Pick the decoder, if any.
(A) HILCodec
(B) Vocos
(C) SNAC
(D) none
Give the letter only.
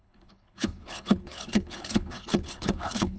A